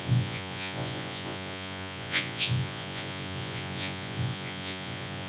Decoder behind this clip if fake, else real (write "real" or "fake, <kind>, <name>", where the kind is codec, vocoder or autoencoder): fake, vocoder, Vocos